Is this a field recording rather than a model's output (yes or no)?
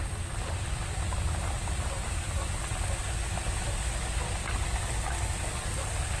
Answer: yes